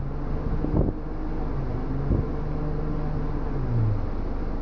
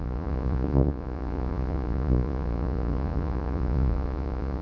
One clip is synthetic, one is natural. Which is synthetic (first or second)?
second